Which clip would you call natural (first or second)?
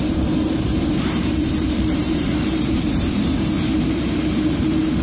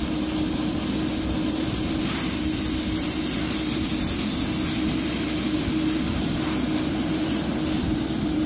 second